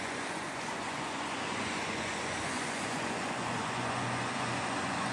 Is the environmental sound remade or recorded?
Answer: remade